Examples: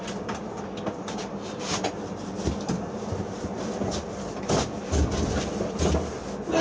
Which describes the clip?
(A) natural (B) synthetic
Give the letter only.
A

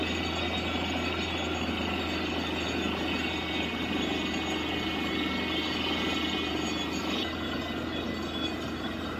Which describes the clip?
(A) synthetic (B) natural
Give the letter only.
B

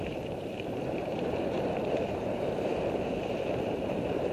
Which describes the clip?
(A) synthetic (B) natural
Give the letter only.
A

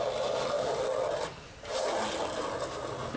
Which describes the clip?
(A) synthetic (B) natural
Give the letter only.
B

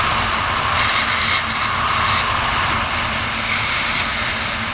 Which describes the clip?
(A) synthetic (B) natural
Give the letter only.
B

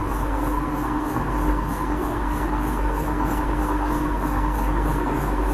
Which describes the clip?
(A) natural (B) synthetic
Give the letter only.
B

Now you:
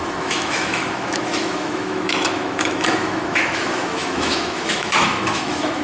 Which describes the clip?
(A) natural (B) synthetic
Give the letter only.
B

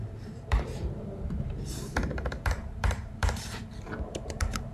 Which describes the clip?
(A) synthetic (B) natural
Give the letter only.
A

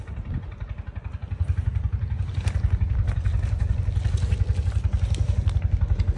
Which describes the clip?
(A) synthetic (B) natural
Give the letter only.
B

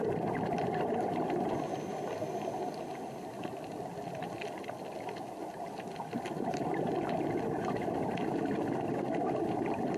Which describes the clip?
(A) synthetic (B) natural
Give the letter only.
B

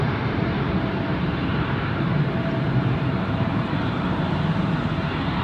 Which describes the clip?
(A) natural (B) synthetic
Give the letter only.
B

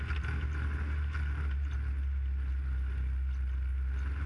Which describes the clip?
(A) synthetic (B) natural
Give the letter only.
B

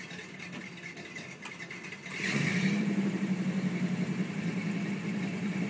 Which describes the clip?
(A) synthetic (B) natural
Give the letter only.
A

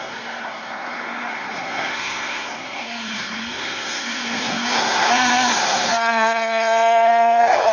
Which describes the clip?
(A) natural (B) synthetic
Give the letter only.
B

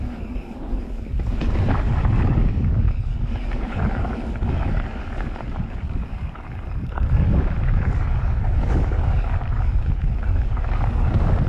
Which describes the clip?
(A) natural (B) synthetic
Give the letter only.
B